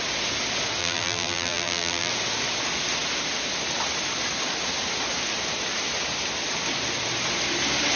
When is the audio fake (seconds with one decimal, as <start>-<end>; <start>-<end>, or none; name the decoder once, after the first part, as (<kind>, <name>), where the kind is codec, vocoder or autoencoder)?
0.8-2.1 (vocoder, BigVGAN v2)